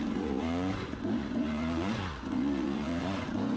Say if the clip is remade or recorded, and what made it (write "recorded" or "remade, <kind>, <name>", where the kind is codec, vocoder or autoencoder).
remade, vocoder, Vocos